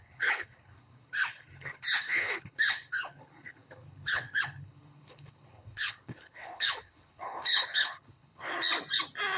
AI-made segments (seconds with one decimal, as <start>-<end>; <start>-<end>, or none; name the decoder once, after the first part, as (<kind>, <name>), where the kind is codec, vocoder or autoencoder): 0.0-8.5 (codec, HILCodec)